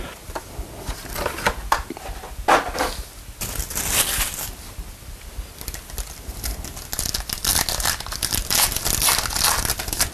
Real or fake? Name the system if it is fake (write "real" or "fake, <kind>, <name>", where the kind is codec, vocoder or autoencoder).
real